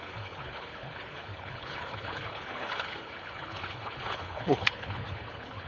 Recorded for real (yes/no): no